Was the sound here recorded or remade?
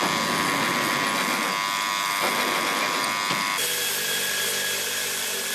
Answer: recorded